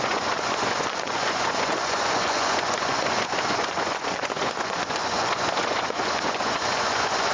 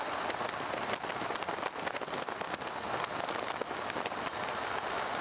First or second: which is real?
second